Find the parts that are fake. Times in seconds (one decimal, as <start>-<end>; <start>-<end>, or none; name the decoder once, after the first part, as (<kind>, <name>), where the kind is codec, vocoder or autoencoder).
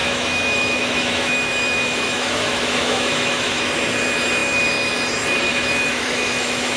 0.0-3.6 (autoencoder, DAC-VAE); 5.5-6.8